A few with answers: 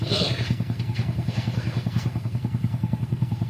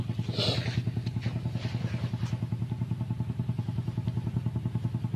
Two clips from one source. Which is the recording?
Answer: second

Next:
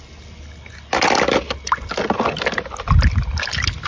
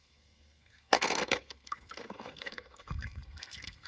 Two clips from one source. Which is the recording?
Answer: first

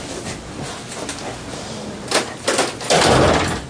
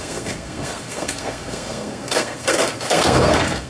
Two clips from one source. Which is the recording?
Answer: first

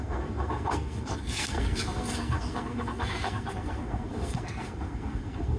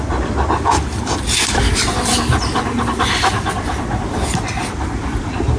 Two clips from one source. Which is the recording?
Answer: second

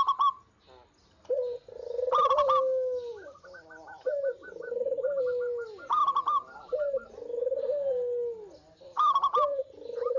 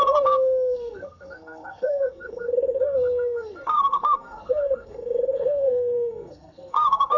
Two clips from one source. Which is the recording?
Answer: first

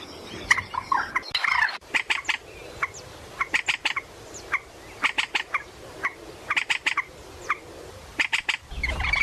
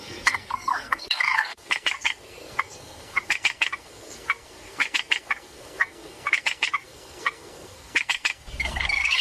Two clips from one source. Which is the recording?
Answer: first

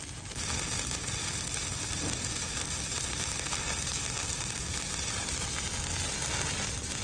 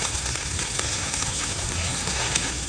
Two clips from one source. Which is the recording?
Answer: first